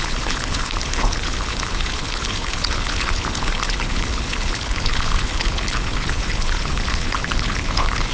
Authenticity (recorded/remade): remade